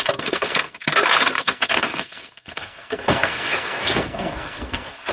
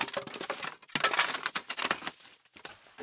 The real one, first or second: second